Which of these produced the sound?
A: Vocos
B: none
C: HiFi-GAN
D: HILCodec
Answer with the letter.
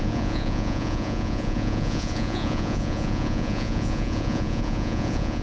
A